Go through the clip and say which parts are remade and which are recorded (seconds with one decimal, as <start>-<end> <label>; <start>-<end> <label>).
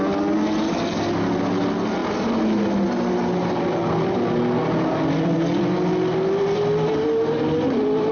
0.0-8.1 recorded